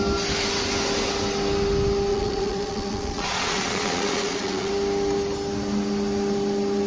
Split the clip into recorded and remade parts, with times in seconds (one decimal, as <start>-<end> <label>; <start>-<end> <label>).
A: 0.0-2.1 recorded; 2.1-4.7 remade; 4.7-6.9 recorded